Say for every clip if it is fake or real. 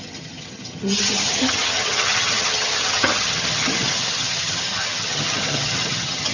fake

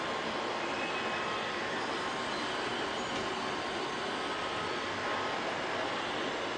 real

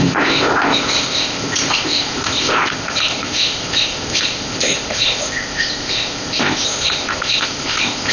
fake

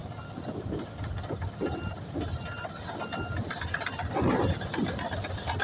real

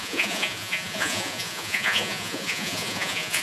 fake